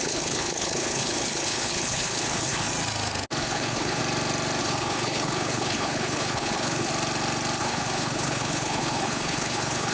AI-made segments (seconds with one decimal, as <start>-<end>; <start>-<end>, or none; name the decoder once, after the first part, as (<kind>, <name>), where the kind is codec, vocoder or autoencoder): 0.0-2.7 (codec, HILCodec); 3.4-4.0; 4.6-6.9; 7.6-9.9